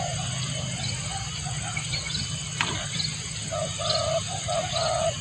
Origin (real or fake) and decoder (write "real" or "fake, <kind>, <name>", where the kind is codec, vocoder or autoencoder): real